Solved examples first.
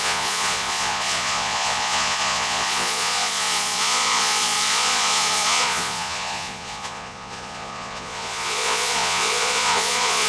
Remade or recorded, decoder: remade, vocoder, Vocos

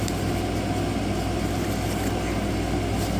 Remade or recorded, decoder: recorded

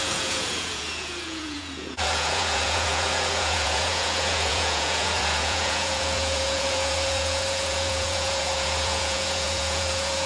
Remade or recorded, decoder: remade, vocoder, Vocos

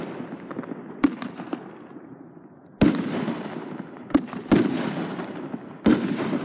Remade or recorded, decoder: recorded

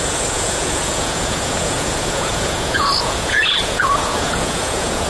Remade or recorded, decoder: remade, vocoder, Vocos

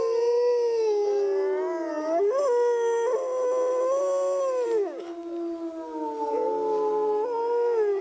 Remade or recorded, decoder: recorded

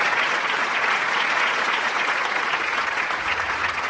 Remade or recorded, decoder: remade, vocoder, Vocos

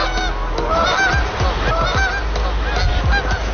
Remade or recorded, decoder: recorded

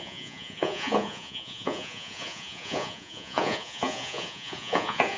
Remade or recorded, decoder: remade, vocoder, Vocos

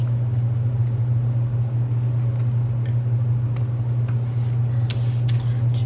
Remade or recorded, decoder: recorded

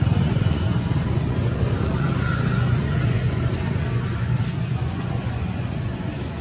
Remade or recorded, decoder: remade, vocoder, Vocos